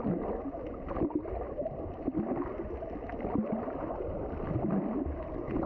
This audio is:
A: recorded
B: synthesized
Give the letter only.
A